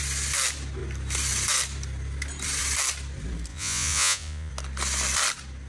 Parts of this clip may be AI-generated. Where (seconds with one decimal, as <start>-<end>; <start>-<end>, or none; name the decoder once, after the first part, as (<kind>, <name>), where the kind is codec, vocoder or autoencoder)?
3.5-4.5 (vocoder, Vocos)